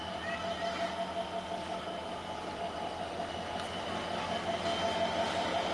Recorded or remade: recorded